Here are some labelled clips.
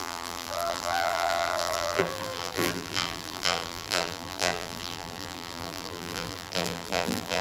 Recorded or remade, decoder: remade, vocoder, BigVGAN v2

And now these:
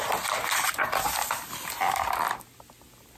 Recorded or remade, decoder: recorded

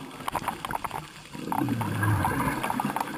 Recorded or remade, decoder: recorded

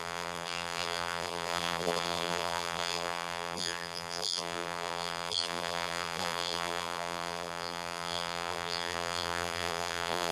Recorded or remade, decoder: remade, vocoder, BigVGAN v2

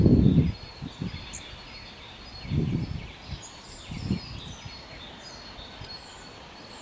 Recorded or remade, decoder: recorded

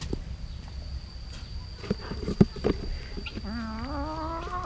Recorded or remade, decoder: recorded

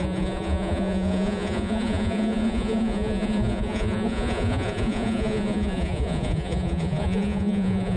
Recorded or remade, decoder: remade, vocoder, Vocos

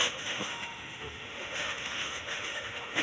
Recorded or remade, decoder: remade, autoencoder, DAC-VAE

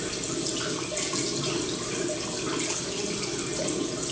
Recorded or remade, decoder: recorded